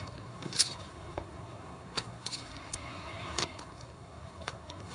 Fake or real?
fake